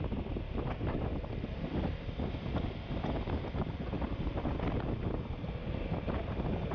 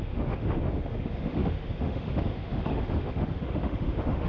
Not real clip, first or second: second